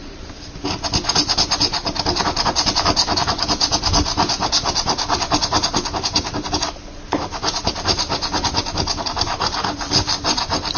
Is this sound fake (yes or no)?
no